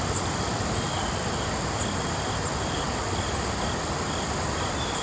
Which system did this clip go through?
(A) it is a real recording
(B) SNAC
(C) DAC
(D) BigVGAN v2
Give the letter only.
A